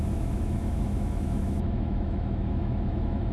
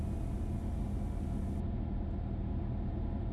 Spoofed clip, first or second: first